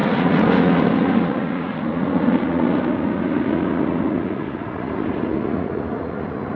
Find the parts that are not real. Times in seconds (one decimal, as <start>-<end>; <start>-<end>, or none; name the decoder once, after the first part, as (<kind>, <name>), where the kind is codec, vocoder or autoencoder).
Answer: 0.0-6.6 (vocoder, Vocos)